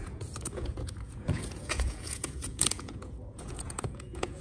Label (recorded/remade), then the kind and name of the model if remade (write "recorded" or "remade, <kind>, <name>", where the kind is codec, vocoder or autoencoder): remade, vocoder, Vocos